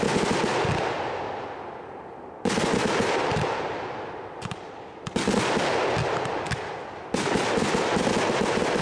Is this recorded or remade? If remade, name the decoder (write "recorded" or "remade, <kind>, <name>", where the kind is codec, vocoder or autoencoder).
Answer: recorded